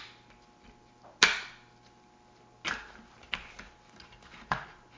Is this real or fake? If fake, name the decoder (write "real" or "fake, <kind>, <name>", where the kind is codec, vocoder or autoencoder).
real